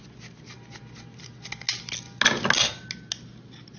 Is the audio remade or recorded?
recorded